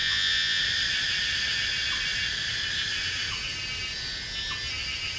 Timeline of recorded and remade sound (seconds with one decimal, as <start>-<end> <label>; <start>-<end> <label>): 0.0-0.6 remade; 0.6-5.2 recorded

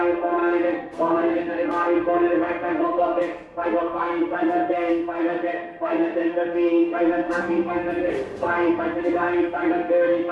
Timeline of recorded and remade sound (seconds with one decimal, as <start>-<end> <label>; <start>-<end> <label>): 0.0-10.3 remade